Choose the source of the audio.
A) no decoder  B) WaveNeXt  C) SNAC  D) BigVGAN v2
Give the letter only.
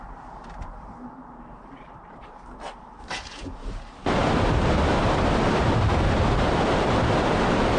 D